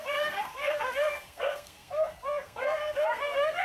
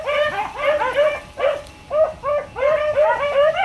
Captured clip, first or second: second